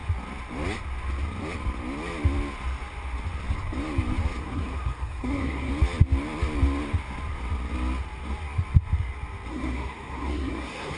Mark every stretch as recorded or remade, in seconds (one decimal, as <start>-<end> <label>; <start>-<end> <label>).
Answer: 0.0-4.4 recorded; 4.4-5.7 remade; 5.7-9.5 recorded; 9.5-11.0 remade